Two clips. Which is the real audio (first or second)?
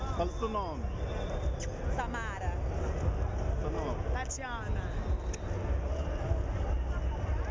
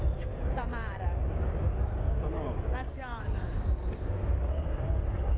first